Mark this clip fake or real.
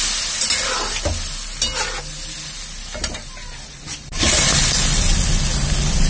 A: real